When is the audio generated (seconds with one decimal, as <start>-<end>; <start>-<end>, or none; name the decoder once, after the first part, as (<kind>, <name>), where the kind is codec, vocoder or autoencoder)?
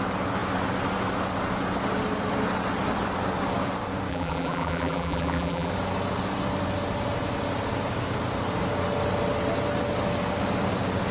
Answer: 4.1-5.7 (vocoder, BigVGAN v2)